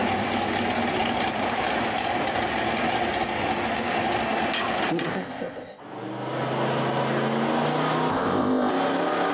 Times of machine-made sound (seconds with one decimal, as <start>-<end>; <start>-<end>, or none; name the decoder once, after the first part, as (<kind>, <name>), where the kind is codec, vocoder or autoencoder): 5.1-5.8 (codec, ZipCodec); 8.1-8.7